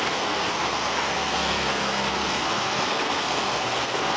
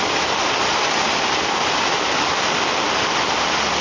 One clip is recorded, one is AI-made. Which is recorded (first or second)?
second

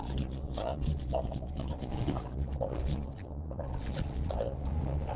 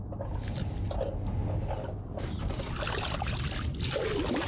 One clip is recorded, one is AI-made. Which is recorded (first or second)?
second